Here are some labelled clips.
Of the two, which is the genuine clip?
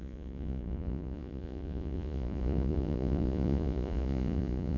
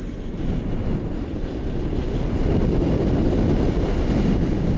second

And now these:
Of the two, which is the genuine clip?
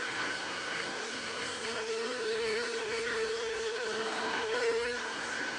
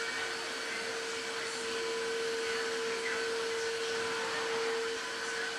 second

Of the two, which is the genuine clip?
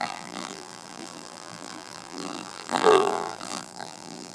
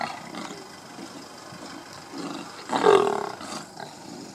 second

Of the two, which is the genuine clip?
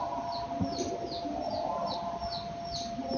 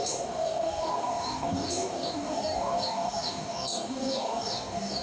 first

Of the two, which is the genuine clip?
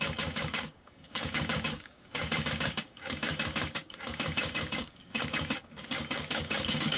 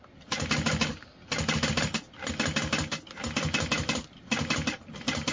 second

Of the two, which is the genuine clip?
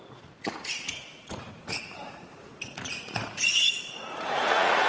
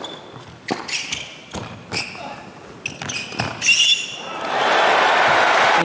second